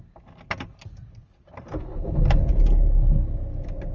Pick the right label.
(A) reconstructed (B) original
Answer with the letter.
B